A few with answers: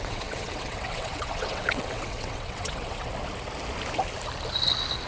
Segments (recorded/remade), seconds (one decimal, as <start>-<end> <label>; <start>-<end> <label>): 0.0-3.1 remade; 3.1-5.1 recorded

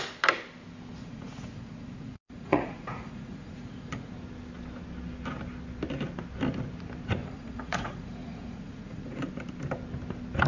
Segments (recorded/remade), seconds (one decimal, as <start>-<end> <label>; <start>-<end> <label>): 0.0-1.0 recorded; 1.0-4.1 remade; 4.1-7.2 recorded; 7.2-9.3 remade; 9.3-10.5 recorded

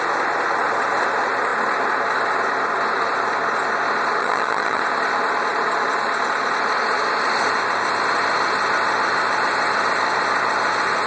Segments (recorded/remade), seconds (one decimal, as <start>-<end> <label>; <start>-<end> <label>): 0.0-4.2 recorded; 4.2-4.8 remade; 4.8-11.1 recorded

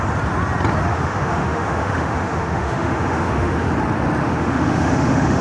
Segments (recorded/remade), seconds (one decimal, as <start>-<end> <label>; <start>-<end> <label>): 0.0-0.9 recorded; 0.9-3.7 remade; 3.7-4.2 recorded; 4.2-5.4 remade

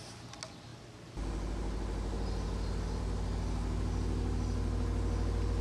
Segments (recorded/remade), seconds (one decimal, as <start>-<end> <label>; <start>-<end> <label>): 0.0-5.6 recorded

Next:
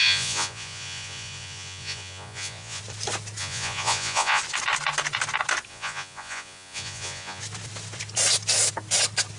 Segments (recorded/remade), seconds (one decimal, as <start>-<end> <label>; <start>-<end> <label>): 0.0-2.8 remade; 2.8-3.4 recorded; 3.4-4.4 remade; 4.4-5.7 recorded; 5.7-7.4 remade; 7.4-9.4 recorded